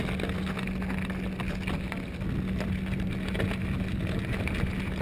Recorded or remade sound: recorded